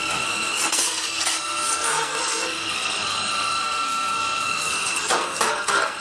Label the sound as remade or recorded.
remade